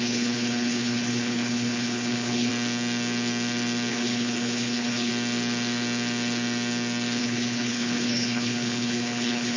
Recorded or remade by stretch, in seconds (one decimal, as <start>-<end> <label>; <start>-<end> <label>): 0.0-2.5 remade; 2.5-3.9 recorded; 3.9-5.1 remade; 5.1-7.2 recorded; 7.2-9.6 remade